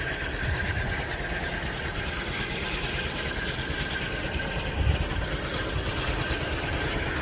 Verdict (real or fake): real